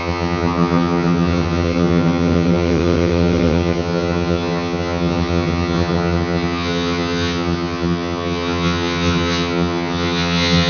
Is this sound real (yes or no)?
no